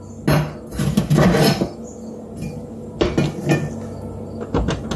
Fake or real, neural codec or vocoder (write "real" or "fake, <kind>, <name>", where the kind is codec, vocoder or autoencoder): real